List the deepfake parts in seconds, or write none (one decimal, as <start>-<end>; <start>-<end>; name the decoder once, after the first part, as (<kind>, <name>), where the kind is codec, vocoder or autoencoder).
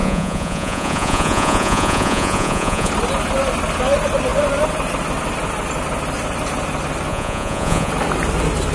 0.0-2.9 (vocoder, Vocos); 7.1-7.9